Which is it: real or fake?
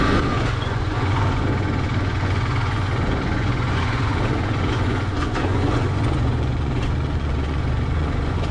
fake